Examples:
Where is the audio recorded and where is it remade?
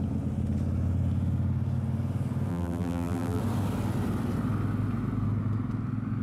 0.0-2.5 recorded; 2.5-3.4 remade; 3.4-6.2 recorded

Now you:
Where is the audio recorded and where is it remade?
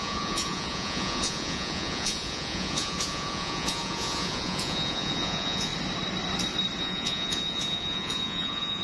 0.0-5.7 remade; 5.7-6.8 recorded; 6.8-8.8 remade